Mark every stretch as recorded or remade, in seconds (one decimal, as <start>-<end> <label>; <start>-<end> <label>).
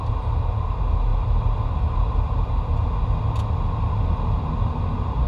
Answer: 0.0-5.3 recorded